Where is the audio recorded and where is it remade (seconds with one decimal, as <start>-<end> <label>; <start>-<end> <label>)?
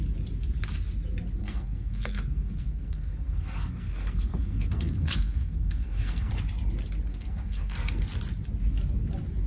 0.0-1.4 recorded; 1.4-6.3 remade; 6.3-7.1 recorded; 7.1-8.0 remade; 8.0-9.5 recorded